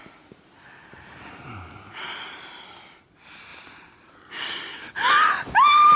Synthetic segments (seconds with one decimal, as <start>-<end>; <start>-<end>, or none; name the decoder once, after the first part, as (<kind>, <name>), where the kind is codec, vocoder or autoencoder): none